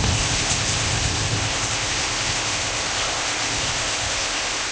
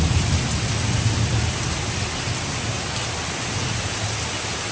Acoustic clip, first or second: second